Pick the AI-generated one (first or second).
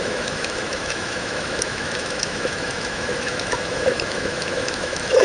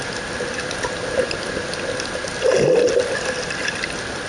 first